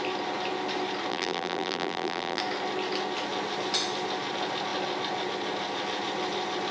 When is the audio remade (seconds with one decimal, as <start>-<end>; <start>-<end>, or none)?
1.1-2.4